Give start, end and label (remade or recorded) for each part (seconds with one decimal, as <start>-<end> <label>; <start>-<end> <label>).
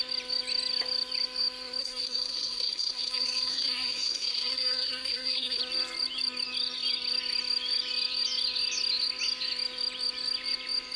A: 0.0-1.8 recorded; 1.8-5.6 remade; 5.6-11.0 recorded